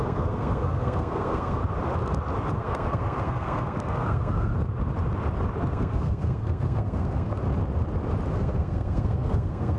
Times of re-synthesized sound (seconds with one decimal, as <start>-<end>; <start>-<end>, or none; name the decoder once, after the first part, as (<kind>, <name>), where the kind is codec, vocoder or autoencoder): 0.0-1.6 (codec, SNAC); 2.6-4.5; 5.7-7.3; 8.3-9.8